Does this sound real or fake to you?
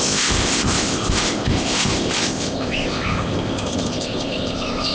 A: fake